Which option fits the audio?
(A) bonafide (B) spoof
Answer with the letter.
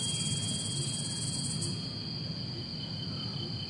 A